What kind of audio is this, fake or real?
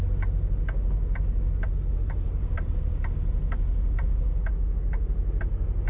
real